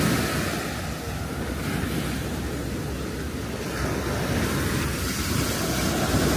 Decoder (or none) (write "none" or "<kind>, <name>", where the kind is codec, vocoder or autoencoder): none